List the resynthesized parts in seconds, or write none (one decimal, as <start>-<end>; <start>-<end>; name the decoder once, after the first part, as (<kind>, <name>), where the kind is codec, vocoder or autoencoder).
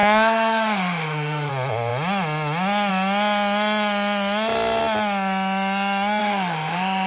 0.0-1.5 (autoencoder, DAC-VAE); 6.2-7.1